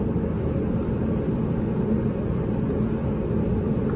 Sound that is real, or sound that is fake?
real